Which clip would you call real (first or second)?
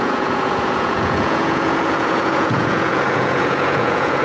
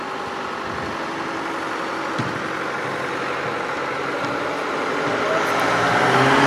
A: second